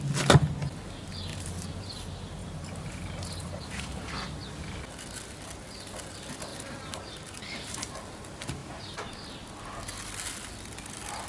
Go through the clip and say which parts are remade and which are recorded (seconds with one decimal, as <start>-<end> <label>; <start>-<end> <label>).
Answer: 0.0-1.3 recorded; 1.3-1.9 remade; 1.9-2.4 recorded; 2.4-4.3 remade; 4.3-6.5 recorded; 6.5-7.9 remade; 7.9-8.6 recorded; 8.6-9.1 remade; 9.1-11.3 recorded